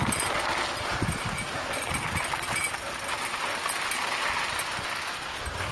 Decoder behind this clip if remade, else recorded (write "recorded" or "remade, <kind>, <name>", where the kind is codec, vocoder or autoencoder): recorded